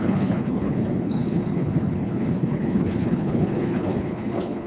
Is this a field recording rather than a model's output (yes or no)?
no